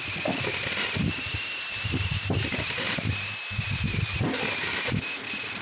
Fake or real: real